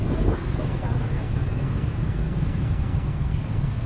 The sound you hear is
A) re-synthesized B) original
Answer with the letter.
A